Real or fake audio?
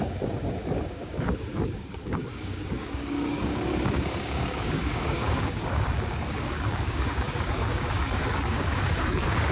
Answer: fake